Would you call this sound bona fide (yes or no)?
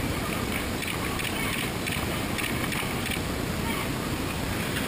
yes